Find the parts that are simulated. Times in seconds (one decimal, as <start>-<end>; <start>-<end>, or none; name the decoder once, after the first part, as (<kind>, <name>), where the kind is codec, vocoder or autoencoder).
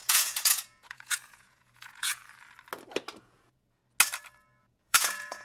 0.0-2.2 (vocoder, Vocos); 3.2-3.8; 4.6-5.4